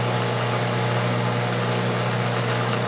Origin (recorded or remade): recorded